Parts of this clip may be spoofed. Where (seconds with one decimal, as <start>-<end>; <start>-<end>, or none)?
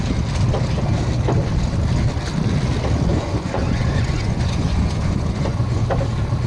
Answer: 3.1-5.8